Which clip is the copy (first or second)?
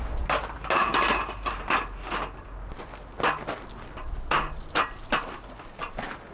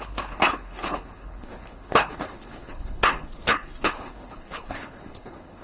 second